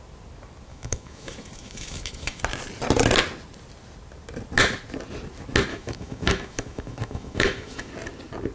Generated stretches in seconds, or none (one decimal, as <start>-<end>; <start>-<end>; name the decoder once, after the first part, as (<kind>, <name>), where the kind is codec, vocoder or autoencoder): 0.7-2.4 (autoencoder, DAC-VAE); 5.7-7.9